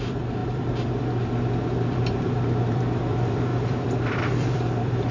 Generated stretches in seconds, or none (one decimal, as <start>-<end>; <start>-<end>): 0.0-5.1